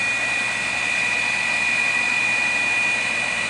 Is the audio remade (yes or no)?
no